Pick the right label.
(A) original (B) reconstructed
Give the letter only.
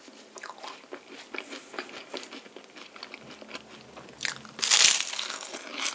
A